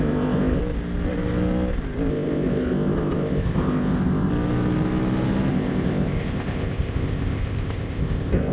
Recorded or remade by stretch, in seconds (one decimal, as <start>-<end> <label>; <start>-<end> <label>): 0.0-0.6 remade; 0.6-2.1 recorded; 2.1-4.3 remade; 4.3-5.5 recorded; 5.5-8.5 remade